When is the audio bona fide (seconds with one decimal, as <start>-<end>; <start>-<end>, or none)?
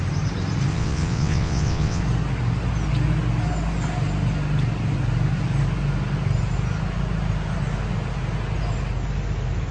0.0-0.7; 2.0-9.7